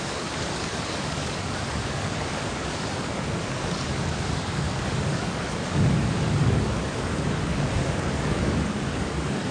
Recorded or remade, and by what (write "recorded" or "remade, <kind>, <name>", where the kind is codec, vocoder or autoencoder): remade, codec, DAC